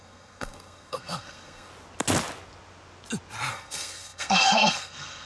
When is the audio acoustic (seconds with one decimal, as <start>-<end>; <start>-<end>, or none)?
1.7-3.5